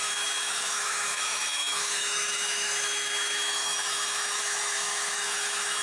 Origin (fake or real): fake